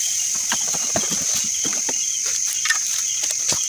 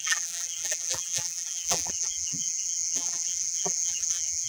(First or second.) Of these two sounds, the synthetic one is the second